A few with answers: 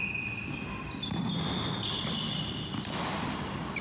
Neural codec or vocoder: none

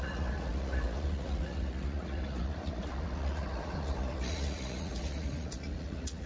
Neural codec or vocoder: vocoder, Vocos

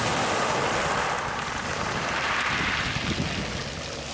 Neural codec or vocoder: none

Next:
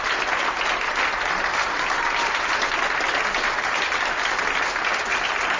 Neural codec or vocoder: none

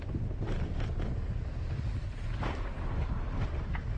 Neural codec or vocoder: none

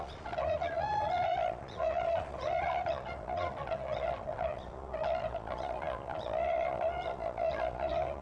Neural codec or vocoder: vocoder, Vocos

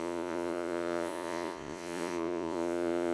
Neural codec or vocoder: vocoder, Vocos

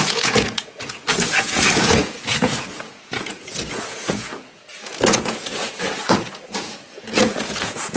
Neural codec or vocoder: vocoder, Vocos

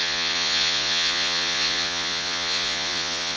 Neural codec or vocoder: vocoder, Vocos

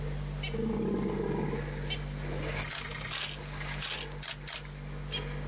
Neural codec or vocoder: none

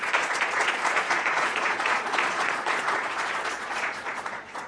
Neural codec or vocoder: vocoder, Vocos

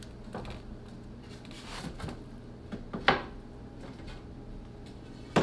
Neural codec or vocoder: none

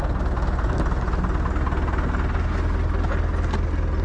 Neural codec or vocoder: none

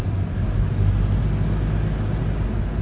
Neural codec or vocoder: none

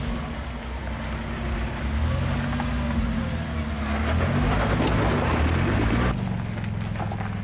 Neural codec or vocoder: none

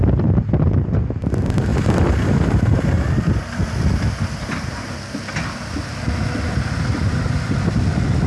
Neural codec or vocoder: none